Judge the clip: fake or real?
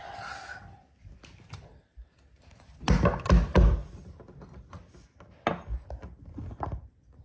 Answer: real